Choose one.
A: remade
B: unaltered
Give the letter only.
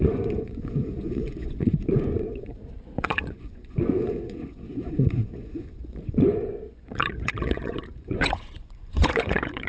A